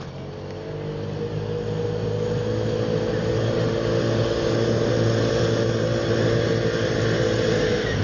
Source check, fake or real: real